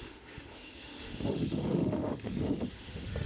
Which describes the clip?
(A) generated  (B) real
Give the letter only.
A